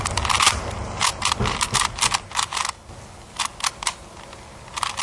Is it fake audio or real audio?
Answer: real